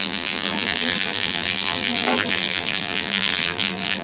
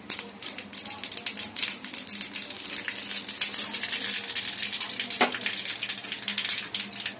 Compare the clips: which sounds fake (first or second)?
first